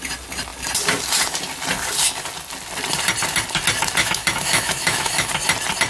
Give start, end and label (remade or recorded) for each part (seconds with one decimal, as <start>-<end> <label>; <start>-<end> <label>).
0.0-4.0 recorded; 4.0-5.3 remade; 5.3-5.9 recorded